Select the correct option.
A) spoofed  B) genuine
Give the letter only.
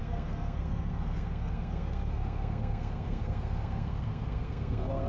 A